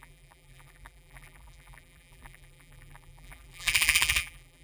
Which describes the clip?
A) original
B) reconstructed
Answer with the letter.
B